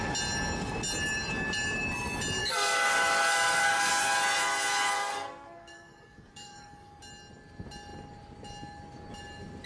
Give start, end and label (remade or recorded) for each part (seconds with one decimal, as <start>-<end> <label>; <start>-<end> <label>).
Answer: 0.0-2.4 recorded; 2.4-3.9 remade; 3.9-5.0 recorded; 5.0-7.0 remade; 7.0-9.7 recorded

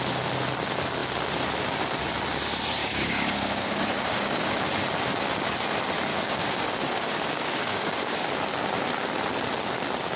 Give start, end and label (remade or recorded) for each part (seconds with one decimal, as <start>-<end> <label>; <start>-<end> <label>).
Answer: 0.0-2.8 recorded; 2.8-4.5 remade; 4.5-6.1 recorded; 6.1-8.3 remade; 8.3-10.2 recorded

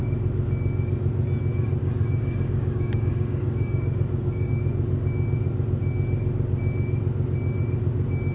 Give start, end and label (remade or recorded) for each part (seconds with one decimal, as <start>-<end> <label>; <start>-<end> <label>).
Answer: 0.0-1.8 recorded; 1.8-4.5 remade; 4.5-8.3 recorded

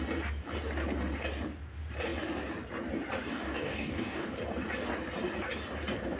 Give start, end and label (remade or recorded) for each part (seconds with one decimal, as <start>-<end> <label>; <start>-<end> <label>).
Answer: 0.0-3.3 recorded; 3.3-4.3 remade; 4.3-6.2 recorded

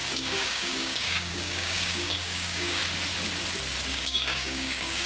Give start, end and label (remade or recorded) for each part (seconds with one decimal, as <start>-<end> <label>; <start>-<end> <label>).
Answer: 0.0-2.8 remade; 2.8-3.9 recorded; 3.9-5.1 remade

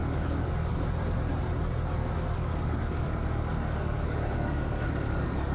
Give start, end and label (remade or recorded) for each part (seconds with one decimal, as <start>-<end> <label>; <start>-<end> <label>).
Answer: 0.0-0.5 remade; 0.5-2.0 recorded; 2.0-5.5 remade